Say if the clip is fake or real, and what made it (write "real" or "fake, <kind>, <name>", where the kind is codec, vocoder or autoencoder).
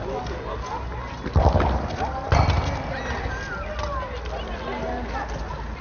real